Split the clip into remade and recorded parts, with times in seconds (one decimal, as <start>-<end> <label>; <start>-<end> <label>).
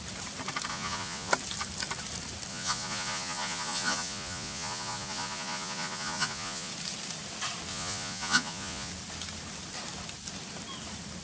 0.0-0.7 recorded; 0.7-1.3 remade; 1.3-2.5 recorded; 2.5-6.7 remade; 6.7-7.7 recorded; 7.7-8.9 remade; 8.9-11.2 recorded